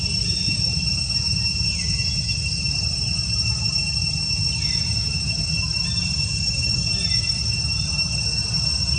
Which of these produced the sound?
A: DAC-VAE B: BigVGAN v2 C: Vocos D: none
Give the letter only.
B